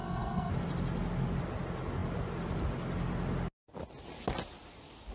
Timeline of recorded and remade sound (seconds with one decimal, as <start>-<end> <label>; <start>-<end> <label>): 0.0-0.5 remade; 0.5-5.1 recorded